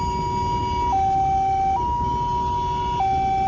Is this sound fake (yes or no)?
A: no